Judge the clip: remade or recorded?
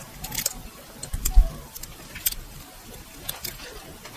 remade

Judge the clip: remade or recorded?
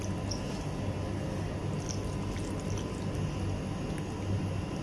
recorded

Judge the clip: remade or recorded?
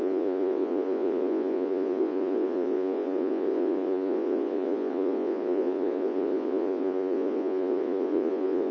remade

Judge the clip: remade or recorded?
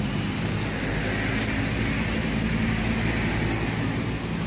recorded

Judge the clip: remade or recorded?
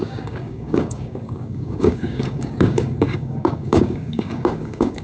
remade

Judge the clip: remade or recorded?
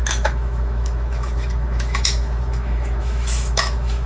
remade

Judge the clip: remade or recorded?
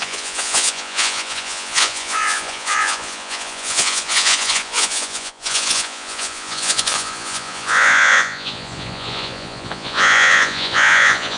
remade